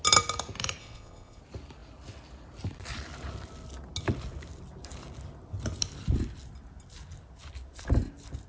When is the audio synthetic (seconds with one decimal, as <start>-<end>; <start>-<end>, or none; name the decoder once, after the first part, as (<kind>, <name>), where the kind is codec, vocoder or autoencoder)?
0.8-1.4 (vocoder, Vocos)